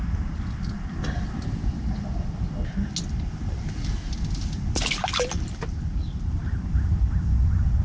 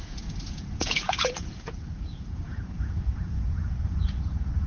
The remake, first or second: second